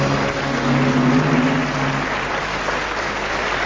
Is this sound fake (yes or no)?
no